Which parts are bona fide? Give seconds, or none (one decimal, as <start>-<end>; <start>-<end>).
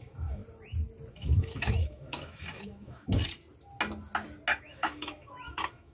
0.4-1.1; 3.2-4.6